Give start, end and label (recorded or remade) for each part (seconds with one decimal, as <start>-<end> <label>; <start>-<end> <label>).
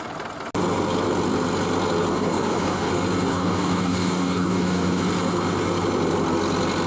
0.0-2.1 recorded; 2.1-2.9 remade; 2.9-3.3 recorded; 3.3-5.0 remade; 5.0-6.9 recorded